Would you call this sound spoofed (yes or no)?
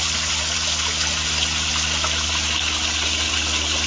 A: no